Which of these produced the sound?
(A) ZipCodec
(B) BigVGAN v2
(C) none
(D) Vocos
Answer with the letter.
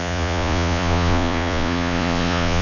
D